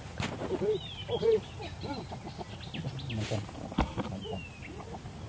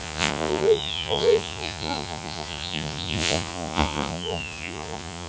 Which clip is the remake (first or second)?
second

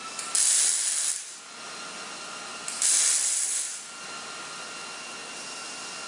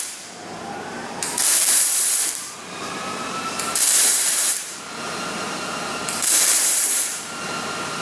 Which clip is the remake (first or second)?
second